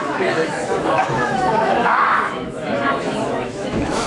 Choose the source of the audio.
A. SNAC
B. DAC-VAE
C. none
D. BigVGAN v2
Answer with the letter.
B